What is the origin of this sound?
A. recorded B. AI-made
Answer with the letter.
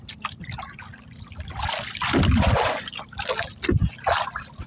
A